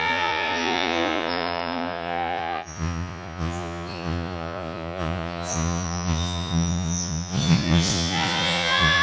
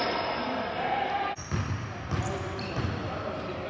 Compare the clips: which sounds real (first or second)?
second